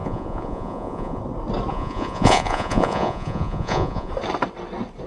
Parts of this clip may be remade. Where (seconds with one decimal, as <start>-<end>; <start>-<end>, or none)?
0.0-1.2; 1.7-4.1